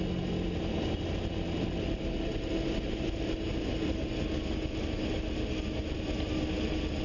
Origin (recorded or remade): recorded